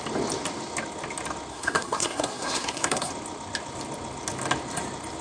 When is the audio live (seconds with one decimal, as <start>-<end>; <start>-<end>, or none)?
0.0-1.5; 3.1-5.2